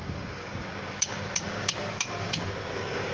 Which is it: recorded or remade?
remade